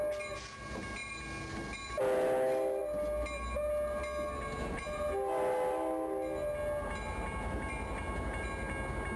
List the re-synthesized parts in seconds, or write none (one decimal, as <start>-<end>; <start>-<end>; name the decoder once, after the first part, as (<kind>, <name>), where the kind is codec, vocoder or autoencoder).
none